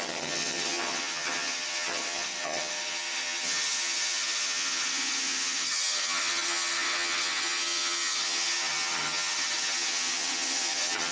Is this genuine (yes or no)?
no